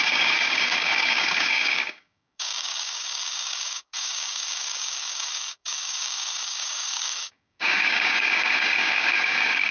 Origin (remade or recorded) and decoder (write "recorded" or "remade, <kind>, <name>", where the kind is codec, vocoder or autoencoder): remade, codec, DAC